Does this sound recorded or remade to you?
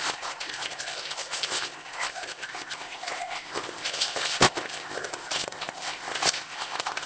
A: remade